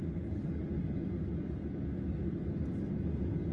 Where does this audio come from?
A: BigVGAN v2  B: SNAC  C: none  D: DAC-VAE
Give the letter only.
C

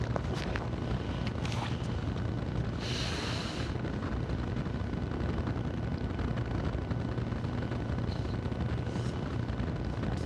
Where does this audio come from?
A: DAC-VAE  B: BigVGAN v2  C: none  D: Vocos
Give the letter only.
C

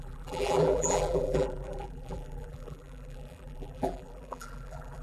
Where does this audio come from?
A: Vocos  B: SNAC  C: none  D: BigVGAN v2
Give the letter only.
D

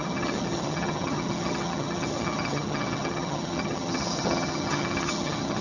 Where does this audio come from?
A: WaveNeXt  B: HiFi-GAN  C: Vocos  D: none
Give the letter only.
B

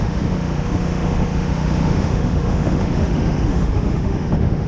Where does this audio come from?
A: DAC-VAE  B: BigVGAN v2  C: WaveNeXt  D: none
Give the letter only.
A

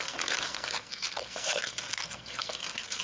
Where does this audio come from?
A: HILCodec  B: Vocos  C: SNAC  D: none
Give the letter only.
C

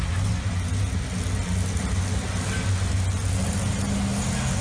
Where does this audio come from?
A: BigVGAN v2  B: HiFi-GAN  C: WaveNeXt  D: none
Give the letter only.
D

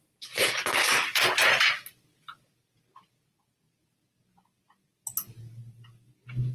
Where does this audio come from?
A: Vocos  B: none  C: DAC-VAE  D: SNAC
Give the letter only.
B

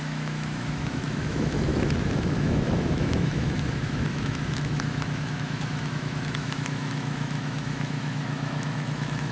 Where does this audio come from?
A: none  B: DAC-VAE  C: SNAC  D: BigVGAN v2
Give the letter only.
B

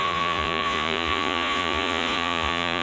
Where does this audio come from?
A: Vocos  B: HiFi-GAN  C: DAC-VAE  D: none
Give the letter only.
A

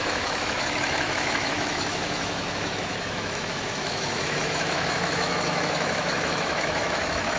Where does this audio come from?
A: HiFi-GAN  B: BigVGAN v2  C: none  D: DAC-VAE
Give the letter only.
D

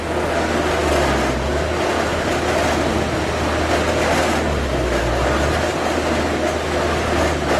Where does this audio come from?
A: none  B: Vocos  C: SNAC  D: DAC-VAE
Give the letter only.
A